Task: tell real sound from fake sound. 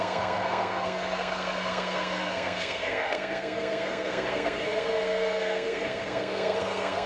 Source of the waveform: fake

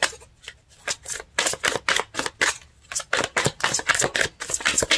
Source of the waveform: real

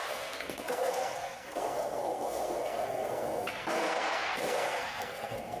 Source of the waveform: fake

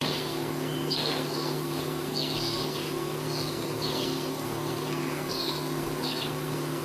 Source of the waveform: fake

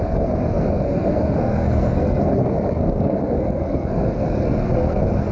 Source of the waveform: fake